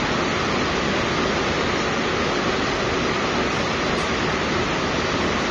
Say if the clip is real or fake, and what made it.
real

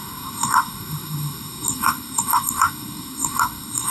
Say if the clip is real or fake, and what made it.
fake, codec, SNAC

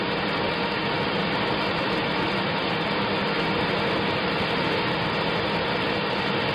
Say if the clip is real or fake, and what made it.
real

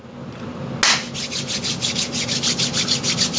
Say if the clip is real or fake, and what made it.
real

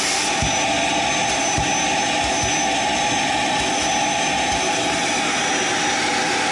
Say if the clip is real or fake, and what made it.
real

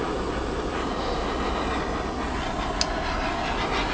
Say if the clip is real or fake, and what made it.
real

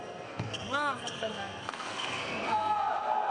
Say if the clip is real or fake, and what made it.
fake, codec, SNAC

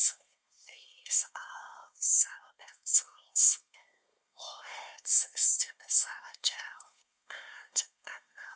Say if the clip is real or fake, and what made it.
fake, codec, SNAC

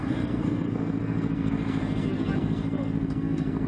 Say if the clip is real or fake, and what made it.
fake, codec, SNAC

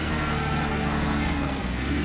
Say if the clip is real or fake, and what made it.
fake, codec, SNAC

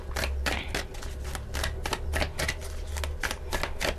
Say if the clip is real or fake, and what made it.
real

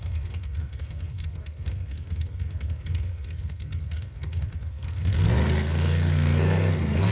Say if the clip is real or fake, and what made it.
fake, codec, SNAC